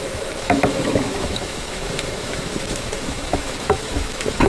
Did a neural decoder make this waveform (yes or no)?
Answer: yes